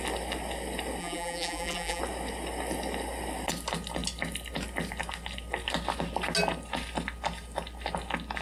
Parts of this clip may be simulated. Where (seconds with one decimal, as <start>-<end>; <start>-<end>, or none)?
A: 1.0-2.0

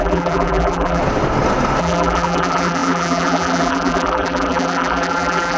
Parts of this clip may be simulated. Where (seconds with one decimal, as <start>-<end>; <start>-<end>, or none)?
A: 0.0-1.0; 1.8-5.6